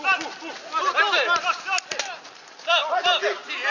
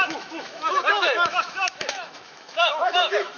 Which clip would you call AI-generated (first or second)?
second